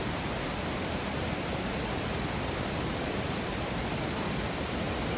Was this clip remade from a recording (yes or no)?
yes